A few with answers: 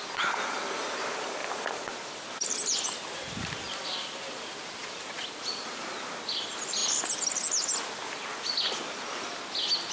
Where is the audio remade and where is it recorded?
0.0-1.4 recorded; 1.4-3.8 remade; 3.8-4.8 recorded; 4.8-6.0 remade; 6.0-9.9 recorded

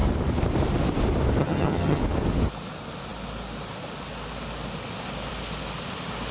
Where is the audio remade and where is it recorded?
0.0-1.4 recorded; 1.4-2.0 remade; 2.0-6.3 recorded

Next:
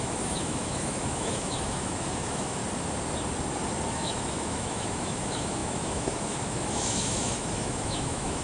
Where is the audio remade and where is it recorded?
0.0-2.6 remade; 2.6-3.9 recorded; 3.9-8.4 remade

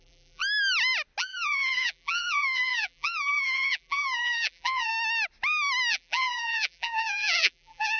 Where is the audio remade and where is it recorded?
0.0-0.4 remade; 0.4-1.2 recorded; 1.2-4.9 remade; 4.9-5.9 recorded; 5.9-8.0 remade

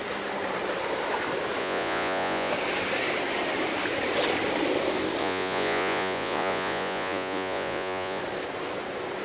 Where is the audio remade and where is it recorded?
0.0-1.6 recorded; 1.6-2.5 remade; 2.5-5.2 recorded; 5.2-8.2 remade; 8.2-9.2 recorded

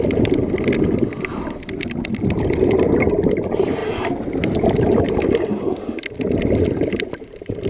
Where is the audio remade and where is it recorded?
0.0-7.7 recorded

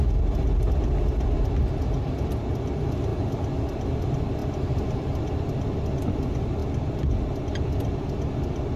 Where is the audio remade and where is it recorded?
0.0-4.4 recorded; 4.4-5.3 remade; 5.3-8.8 recorded

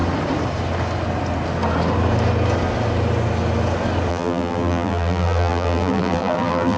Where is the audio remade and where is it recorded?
0.0-4.1 recorded; 4.1-6.8 remade